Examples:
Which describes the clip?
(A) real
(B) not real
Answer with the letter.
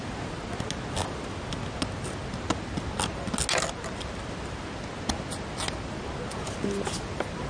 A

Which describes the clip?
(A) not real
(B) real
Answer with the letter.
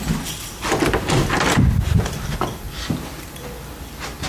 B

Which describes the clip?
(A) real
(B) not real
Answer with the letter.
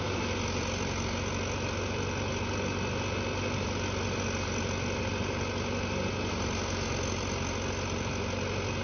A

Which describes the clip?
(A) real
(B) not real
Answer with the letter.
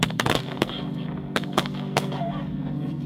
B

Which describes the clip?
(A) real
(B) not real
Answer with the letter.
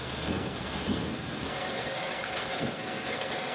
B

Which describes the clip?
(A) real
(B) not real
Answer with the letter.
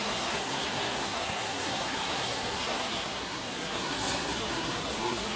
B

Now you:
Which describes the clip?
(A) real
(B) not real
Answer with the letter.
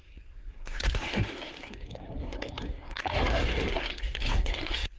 B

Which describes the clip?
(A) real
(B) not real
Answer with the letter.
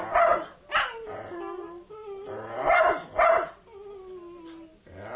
A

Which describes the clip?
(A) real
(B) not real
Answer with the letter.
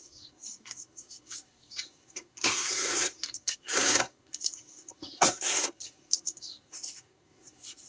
B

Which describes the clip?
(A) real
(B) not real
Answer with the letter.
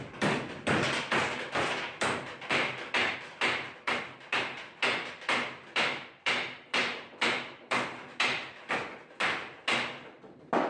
B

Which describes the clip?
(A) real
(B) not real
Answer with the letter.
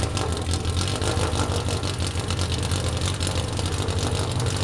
A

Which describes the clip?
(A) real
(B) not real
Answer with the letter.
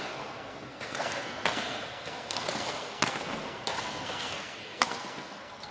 B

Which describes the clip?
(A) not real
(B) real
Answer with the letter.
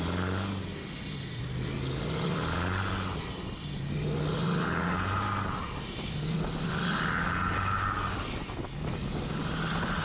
B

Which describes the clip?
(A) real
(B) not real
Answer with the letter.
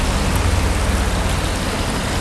A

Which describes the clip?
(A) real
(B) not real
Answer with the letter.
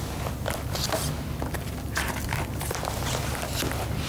A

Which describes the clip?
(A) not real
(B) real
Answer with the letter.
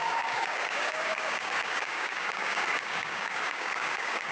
A